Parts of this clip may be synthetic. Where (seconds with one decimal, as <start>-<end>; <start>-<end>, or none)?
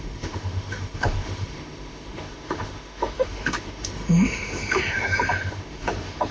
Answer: 0.0-6.3